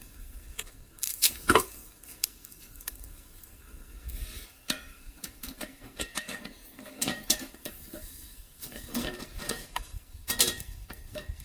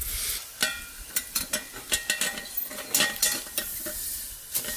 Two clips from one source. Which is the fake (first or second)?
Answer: first